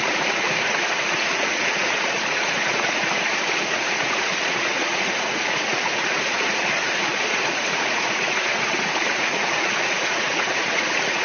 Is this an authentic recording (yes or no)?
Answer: no